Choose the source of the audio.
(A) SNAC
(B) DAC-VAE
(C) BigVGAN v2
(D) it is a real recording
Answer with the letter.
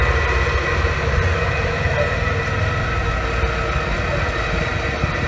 D